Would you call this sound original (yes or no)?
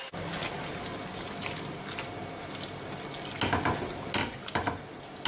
yes